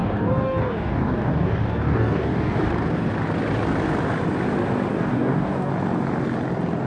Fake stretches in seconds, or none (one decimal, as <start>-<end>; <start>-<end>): 0.0-2.7; 4.9-5.7